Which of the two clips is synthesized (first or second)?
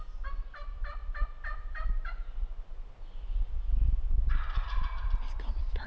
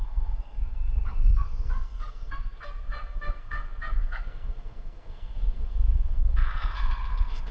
second